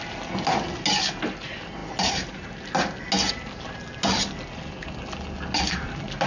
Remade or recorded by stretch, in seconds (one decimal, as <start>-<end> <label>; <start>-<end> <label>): 0.0-6.3 recorded